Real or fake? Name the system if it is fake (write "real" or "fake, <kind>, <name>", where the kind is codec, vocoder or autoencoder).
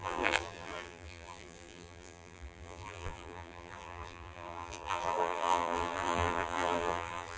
fake, vocoder, BigVGAN v2